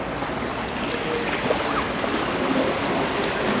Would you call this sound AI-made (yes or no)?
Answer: no